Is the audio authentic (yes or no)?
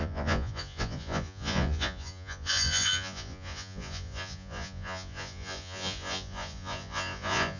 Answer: no